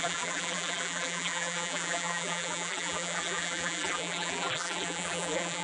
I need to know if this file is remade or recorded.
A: remade